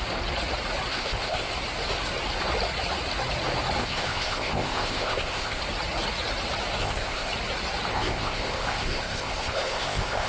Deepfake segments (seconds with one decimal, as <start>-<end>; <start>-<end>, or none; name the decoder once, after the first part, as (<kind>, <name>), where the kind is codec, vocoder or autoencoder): 0.9-1.5 (codec, ZipCodec); 3.8-5.6; 6.8-7.3; 7.9-10.3